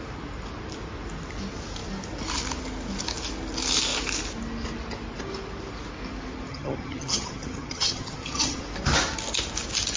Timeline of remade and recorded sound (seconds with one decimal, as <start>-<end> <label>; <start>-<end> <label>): 0.0-6.5 recorded; 6.5-8.6 remade; 8.6-10.0 recorded